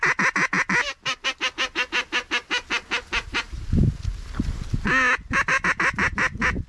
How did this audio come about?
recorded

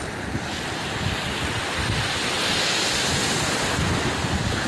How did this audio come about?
remade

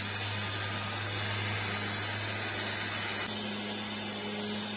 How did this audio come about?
recorded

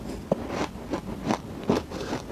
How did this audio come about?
recorded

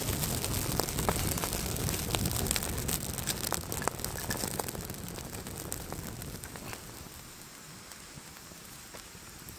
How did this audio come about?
recorded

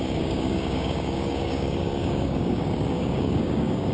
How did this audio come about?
remade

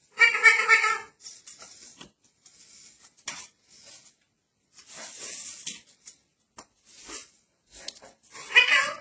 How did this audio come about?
recorded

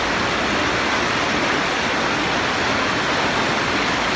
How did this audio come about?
recorded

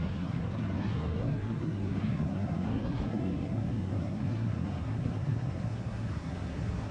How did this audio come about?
remade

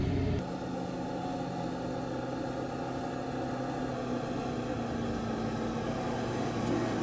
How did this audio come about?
recorded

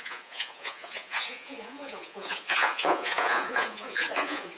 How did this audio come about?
remade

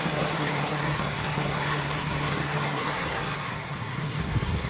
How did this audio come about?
remade